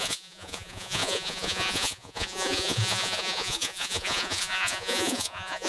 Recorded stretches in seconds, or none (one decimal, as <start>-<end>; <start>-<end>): none